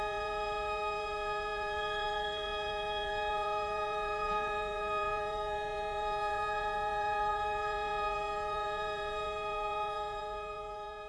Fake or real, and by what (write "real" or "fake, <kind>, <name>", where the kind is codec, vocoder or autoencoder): fake, vocoder, Vocos